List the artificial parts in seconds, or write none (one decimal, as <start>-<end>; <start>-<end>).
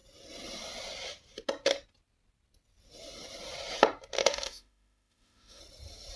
4.2-5.6